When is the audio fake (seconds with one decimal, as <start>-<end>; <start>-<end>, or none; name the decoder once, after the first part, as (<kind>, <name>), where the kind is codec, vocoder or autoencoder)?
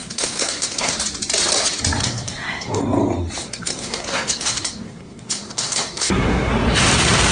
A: 0.0-0.9 (codec, SNAC); 2.0-2.8; 3.4-6.5